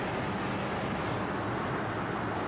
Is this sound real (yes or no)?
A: yes